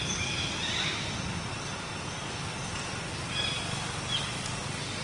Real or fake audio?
real